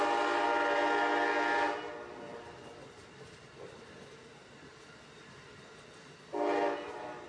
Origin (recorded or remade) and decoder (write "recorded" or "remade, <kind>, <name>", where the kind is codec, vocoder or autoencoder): recorded